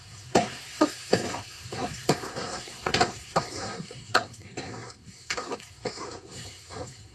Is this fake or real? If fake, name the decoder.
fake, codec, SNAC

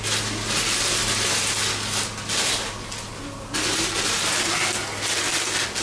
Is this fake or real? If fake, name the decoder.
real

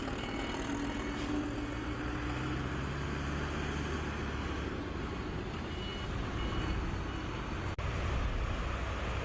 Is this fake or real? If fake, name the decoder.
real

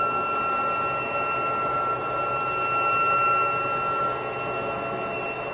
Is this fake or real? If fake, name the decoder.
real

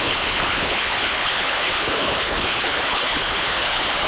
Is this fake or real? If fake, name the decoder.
fake, codec, HILCodec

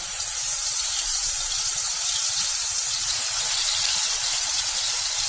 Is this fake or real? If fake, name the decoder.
fake, vocoder, BigVGAN v2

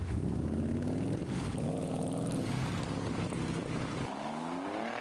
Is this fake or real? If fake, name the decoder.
fake, codec, DAC